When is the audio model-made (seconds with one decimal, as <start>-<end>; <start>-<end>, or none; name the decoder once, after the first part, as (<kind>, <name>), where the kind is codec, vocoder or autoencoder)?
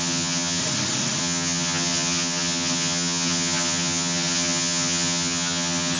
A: 0.0-0.6 (vocoder, HiFi-GAN); 1.2-6.0